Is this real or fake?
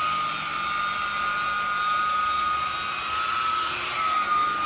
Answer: real